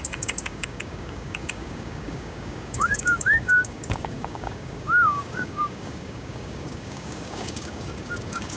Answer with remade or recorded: remade